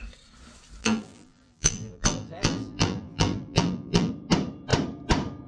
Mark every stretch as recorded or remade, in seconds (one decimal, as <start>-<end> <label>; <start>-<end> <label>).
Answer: 0.0-0.8 recorded; 0.8-4.1 remade; 4.1-5.5 recorded